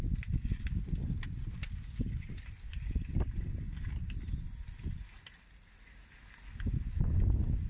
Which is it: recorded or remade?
recorded